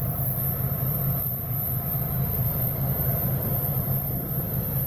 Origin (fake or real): fake